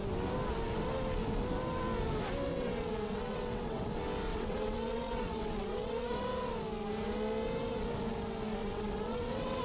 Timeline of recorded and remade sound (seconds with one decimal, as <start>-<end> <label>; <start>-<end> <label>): 0.0-2.5 recorded; 2.5-3.9 remade; 3.9-4.3 recorded; 4.3-6.1 remade; 6.1-8.6 recorded; 8.6-9.6 remade